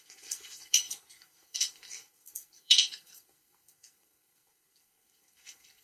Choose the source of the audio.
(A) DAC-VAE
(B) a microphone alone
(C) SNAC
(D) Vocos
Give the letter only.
C